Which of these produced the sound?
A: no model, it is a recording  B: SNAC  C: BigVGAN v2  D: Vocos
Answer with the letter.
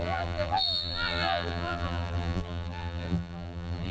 C